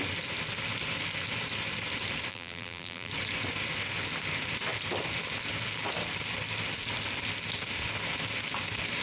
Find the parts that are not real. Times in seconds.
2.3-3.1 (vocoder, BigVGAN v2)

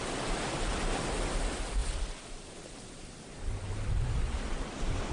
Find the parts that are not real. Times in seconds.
none

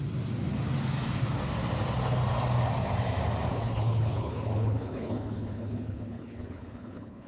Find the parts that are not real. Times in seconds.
3.5-7.3 (codec, HILCodec)

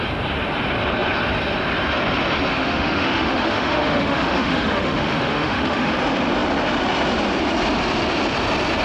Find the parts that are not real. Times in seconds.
2.5-5.9 (autoencoder, DAC-VAE)

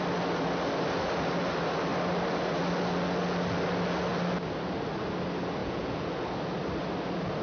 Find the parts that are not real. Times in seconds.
5.6-6.1 (vocoder, Vocos)

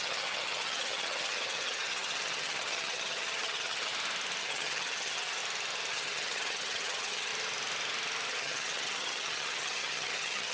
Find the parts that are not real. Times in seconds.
0.0-3.9 (vocoder, HiFi-GAN); 4.4-5.4; 5.9-7.3; 8.3-10.5

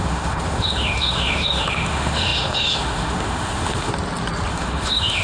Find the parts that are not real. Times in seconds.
0.0-3.9 (autoencoder, DAC-VAE); 4.5-5.2

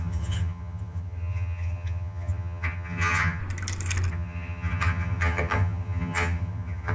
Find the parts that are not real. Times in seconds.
0.0-3.4 (vocoder, HiFi-GAN); 4.1-6.9